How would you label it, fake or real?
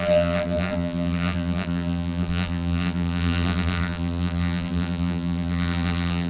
fake